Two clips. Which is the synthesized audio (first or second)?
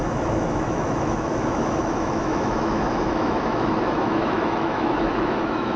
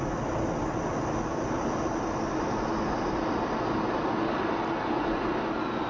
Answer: first